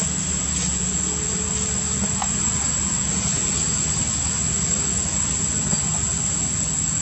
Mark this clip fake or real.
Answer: real